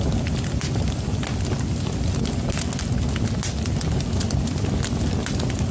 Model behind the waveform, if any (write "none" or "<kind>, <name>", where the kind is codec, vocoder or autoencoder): none